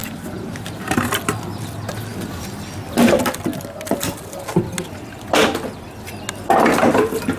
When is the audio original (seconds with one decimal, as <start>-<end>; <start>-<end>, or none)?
1.2-7.4

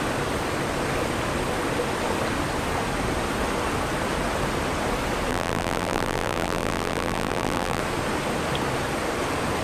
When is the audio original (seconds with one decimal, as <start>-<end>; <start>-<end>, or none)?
0.0-5.3; 7.8-9.6

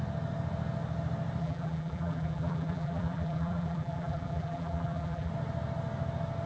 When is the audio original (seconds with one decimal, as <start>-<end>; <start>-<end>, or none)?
0.0-1.4; 5.3-6.5

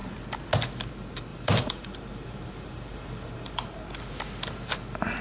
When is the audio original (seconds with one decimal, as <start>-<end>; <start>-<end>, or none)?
0.0-1.3; 3.8-5.2

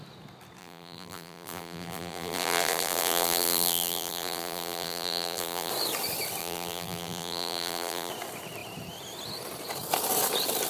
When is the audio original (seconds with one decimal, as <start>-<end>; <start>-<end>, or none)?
0.0-0.6; 5.7-6.4; 8.1-10.7

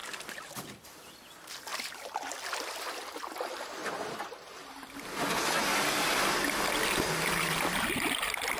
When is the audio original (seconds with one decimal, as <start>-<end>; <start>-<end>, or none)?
3.8-7.3

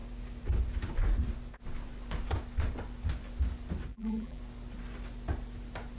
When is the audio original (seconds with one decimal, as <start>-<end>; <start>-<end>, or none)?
0.0-3.9; 4.4-6.0